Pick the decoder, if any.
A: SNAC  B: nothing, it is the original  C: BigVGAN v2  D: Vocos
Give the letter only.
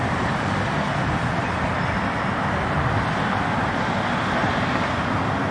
B